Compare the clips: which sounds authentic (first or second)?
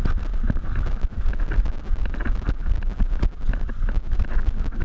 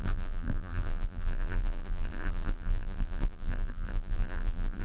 first